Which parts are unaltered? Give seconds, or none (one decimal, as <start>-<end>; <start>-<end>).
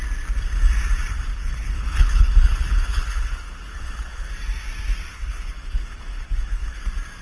0.0-1.3; 4.3-5.1; 6.8-7.2